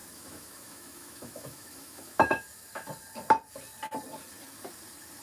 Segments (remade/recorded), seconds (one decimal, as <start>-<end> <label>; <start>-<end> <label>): 0.0-2.9 remade; 2.9-5.2 recorded